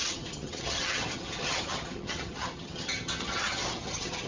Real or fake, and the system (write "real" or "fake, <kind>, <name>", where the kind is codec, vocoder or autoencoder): fake, vocoder, HiFi-GAN